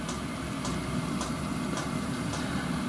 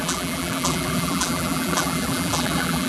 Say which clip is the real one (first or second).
first